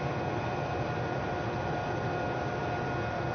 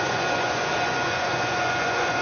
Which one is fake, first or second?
second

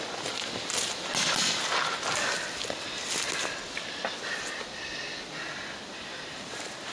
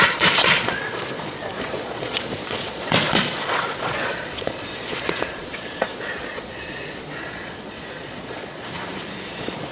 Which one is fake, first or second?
second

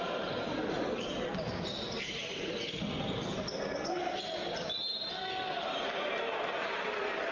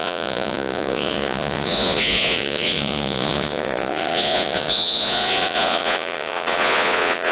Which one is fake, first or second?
second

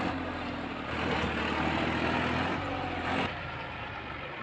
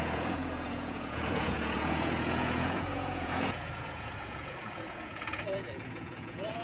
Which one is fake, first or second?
second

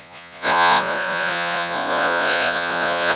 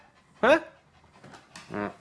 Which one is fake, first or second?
first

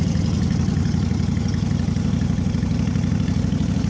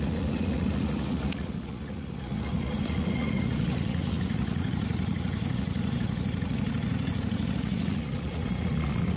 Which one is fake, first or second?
second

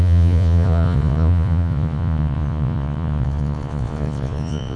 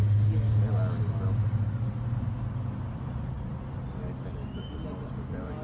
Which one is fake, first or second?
first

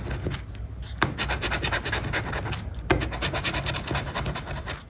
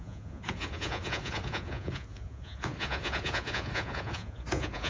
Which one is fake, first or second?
second